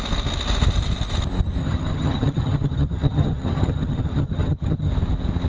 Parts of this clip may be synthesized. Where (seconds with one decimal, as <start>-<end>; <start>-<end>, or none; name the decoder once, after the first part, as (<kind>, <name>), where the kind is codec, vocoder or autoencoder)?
1.6-4.9 (vocoder, HiFi-GAN)